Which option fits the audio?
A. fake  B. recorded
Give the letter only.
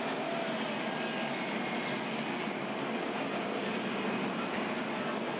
B